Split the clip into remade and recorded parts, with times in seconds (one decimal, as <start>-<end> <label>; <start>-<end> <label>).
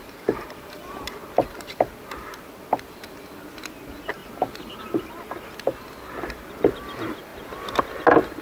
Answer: 0.0-8.4 recorded